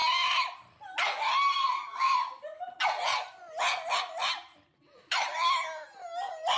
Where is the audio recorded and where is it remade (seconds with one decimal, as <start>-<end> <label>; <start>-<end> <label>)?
0.0-6.6 recorded